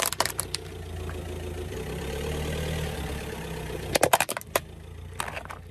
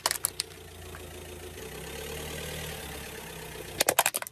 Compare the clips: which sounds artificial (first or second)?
first